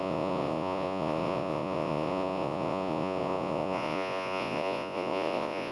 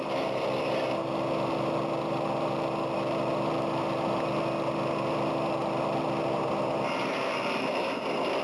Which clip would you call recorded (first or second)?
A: second